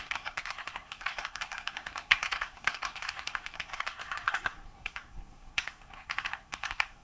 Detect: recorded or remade remade